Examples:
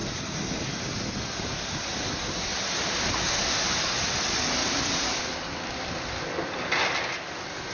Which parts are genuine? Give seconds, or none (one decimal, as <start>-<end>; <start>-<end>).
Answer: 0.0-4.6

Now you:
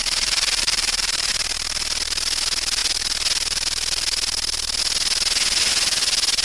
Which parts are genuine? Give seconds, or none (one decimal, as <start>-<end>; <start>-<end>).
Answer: 1.3-6.4

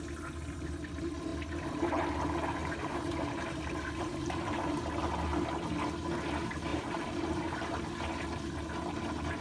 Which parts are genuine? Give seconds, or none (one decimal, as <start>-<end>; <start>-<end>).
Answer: 0.0-2.6; 4.7-6.7; 7.8-9.4

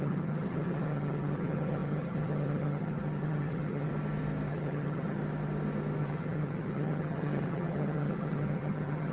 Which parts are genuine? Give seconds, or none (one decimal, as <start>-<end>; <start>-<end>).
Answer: 3.9-4.5; 5.2-6.0

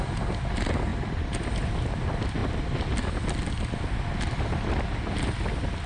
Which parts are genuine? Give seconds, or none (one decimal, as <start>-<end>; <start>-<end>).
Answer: 0.0-5.9

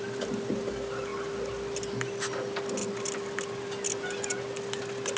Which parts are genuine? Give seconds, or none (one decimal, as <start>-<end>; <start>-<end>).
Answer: 0.0-5.2

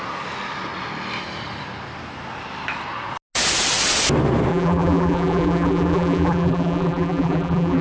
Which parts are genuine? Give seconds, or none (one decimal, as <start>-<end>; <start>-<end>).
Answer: 0.0-4.5